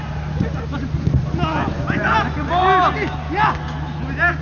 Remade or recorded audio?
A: recorded